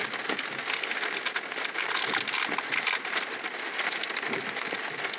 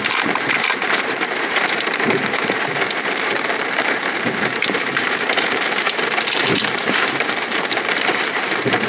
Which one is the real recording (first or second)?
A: first